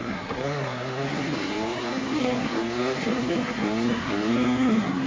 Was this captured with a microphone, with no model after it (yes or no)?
no